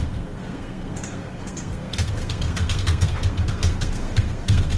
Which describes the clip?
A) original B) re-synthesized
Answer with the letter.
B